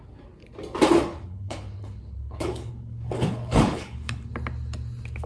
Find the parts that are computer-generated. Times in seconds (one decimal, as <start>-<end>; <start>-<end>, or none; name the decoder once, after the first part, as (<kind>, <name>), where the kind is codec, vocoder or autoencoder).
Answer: 1.1-4.3 (codec, HILCodec)

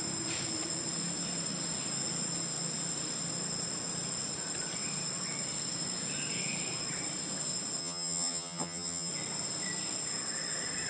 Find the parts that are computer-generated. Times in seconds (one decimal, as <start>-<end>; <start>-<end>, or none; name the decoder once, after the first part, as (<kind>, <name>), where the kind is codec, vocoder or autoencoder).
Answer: 7.8-9.1 (vocoder, HiFi-GAN)

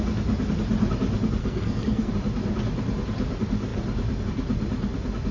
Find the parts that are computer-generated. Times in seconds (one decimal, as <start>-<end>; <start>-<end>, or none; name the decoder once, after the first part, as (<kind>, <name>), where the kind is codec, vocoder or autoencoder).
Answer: 1.4-2.1 (codec, SNAC)

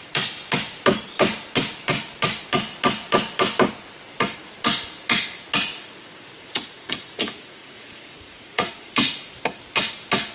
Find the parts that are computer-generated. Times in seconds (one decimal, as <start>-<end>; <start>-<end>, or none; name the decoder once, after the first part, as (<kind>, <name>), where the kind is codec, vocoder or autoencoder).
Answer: 5.7-8.9 (vocoder, Vocos)

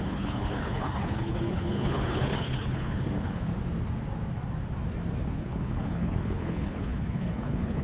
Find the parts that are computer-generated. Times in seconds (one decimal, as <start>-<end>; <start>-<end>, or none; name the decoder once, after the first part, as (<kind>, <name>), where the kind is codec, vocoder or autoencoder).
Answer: 0.0-3.5 (codec, HILCodec); 5.2-7.8